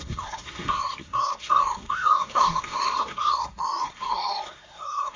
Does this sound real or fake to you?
fake